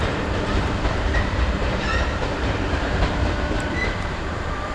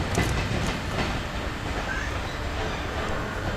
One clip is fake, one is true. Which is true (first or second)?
second